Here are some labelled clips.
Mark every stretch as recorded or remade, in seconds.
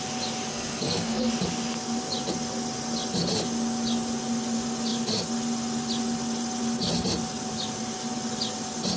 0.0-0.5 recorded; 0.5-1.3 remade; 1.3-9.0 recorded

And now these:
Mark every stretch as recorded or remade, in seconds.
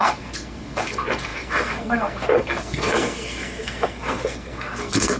0.0-5.2 remade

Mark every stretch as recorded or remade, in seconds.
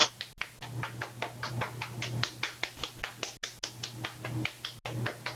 0.0-5.4 recorded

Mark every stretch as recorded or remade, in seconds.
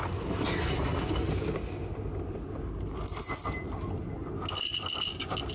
0.0-5.5 recorded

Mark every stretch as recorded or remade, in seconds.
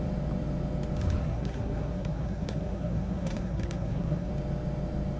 0.0-1.2 recorded; 1.2-4.3 remade; 4.3-5.2 recorded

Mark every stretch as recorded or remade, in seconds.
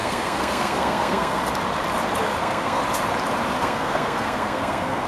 0.0-1.4 remade; 1.4-2.4 recorded; 2.4-2.8 remade; 2.8-3.6 recorded; 3.6-5.1 remade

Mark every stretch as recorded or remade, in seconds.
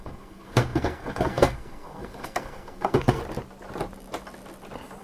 0.0-3.2 remade; 3.2-5.0 recorded